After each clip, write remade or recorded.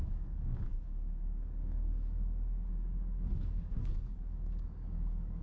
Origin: remade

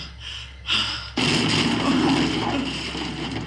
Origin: recorded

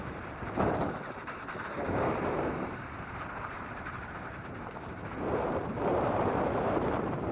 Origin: remade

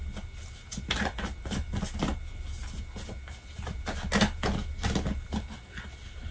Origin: recorded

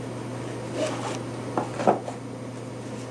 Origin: recorded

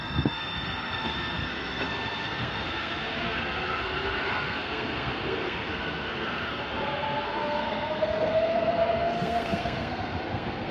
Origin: remade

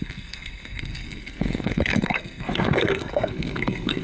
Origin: remade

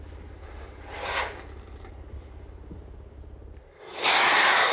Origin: recorded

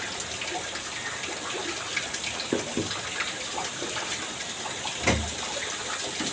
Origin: recorded